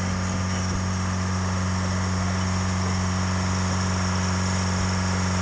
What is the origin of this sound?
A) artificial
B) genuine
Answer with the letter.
B